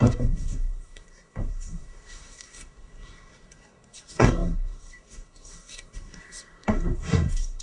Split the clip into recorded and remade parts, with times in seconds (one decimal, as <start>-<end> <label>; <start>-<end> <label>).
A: 0.0-7.6 remade